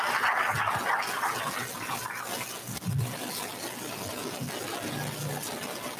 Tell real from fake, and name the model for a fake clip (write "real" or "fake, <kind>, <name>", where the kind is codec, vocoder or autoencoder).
real